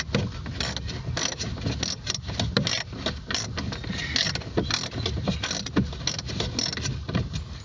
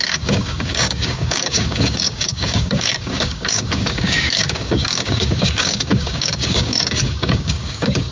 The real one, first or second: first